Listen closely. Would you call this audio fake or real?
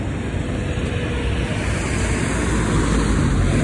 real